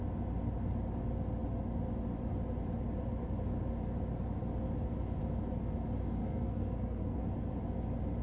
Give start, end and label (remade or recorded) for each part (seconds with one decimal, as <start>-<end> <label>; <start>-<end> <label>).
0.0-6.2 recorded; 6.2-7.2 remade; 7.2-8.2 recorded